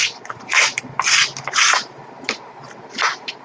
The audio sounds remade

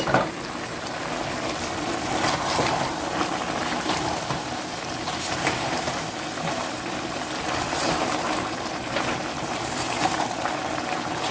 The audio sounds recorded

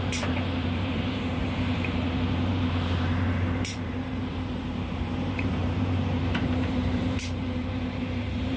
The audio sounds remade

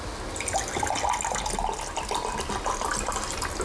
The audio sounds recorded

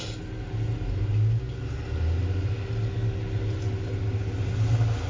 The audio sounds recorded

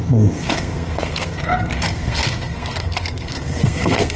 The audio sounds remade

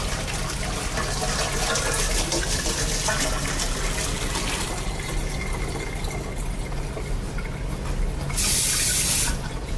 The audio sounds recorded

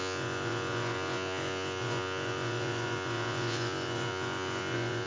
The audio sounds remade